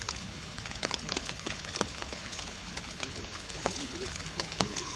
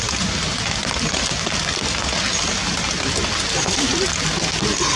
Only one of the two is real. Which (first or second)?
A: second